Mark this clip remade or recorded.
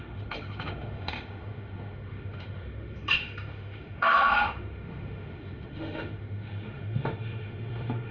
remade